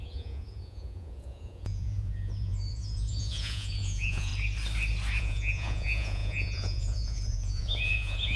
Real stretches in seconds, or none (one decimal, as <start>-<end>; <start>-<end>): 4.3-5.2